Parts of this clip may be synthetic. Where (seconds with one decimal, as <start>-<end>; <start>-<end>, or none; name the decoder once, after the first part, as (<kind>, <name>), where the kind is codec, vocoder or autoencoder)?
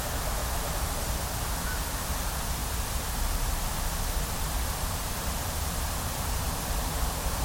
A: none